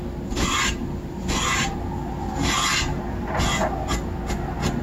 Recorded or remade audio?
recorded